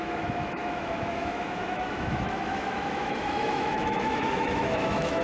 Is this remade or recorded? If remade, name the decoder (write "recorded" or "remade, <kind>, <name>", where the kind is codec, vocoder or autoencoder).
remade, autoencoder, DAC-VAE